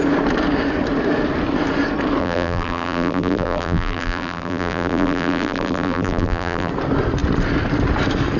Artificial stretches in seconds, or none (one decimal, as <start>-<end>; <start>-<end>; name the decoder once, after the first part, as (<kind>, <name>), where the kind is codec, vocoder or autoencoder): 2.2-6.7 (vocoder, BigVGAN v2)